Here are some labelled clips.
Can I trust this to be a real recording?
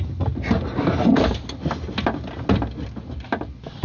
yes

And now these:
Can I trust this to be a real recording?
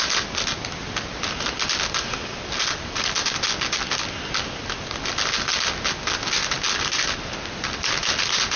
yes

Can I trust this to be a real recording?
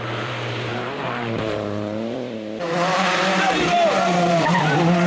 no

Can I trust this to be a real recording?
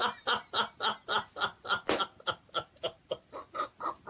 yes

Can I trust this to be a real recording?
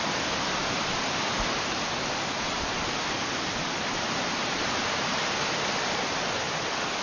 yes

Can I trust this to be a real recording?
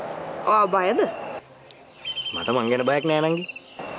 yes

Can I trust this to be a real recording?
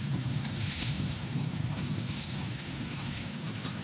no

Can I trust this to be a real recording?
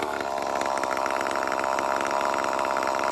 yes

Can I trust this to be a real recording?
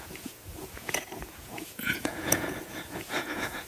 no